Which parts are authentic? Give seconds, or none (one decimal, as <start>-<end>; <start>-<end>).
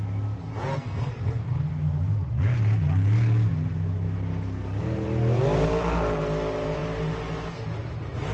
0.0-0.7; 1.7-8.3